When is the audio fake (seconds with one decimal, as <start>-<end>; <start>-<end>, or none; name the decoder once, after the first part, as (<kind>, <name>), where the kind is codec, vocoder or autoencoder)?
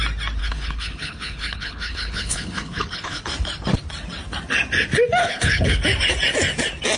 0.4-3.2 (codec, HILCodec); 5.2-5.8